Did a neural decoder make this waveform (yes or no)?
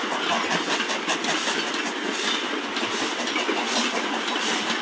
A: no